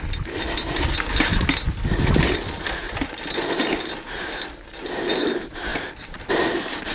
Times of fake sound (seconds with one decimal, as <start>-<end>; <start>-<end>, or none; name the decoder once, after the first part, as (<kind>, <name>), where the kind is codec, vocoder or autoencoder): 5.7-6.5 (vocoder, BigVGAN v2)